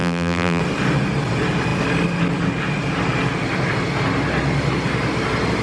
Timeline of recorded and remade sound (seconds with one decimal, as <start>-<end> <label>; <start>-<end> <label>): 0.0-0.6 remade; 0.6-5.6 recorded